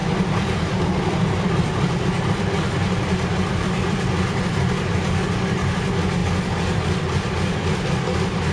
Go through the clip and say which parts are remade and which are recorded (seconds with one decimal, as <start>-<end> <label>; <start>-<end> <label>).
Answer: 0.0-4.7 remade; 4.7-8.5 recorded